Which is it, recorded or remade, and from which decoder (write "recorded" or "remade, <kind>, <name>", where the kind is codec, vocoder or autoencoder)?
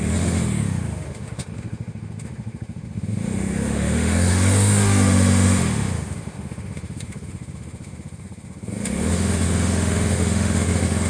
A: remade, autoencoder, DAC-VAE